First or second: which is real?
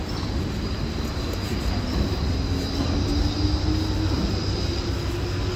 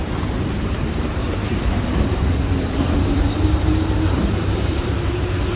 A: first